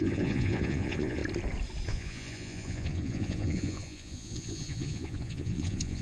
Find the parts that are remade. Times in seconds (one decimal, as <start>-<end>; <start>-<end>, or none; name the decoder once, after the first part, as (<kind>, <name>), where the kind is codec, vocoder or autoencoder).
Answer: 0.0-1.2 (vocoder, Vocos); 1.9-6.0